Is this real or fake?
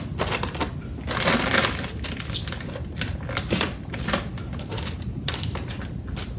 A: real